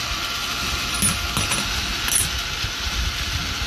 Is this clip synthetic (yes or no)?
no